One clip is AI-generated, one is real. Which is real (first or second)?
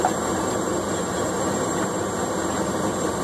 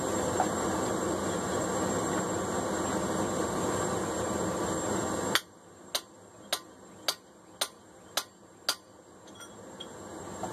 second